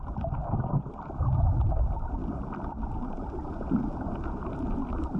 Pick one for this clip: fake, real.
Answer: real